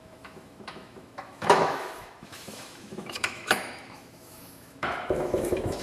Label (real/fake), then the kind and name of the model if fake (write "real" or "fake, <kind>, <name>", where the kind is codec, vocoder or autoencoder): fake, autoencoder, DAC-VAE